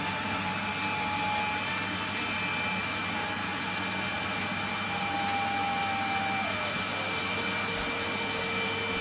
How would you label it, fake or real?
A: real